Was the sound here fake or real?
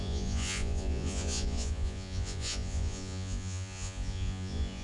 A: fake